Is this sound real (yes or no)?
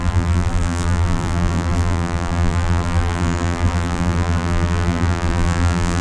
no